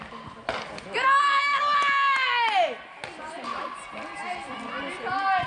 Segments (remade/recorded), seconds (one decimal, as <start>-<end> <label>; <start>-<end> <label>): 0.0-5.5 recorded